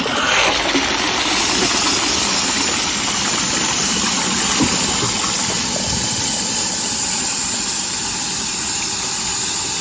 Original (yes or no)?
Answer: yes